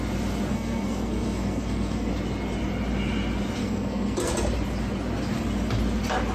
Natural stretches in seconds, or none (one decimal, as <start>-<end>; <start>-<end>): 0.0-0.5; 2.1-3.6; 4.3-6.3